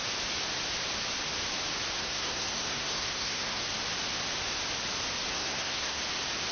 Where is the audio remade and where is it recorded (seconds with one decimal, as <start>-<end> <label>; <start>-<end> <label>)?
0.0-2.0 recorded; 2.0-3.6 remade; 3.6-5.3 recorded; 5.3-6.0 remade; 6.0-6.5 recorded